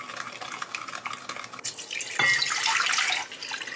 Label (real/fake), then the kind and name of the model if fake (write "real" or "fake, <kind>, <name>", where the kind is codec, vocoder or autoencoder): real